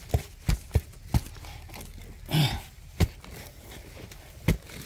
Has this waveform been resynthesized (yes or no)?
no